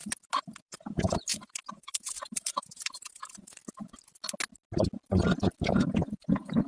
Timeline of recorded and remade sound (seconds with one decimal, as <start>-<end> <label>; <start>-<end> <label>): 0.0-0.6 recorded; 0.6-3.6 remade; 3.6-5.6 recorded; 5.6-6.7 remade